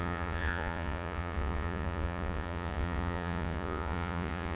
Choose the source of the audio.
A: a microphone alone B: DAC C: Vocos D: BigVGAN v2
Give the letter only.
C